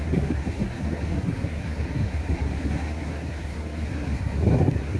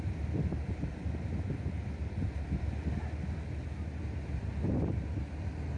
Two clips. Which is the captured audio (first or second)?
second